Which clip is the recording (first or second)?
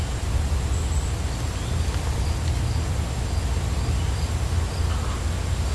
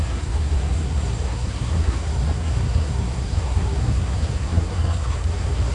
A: first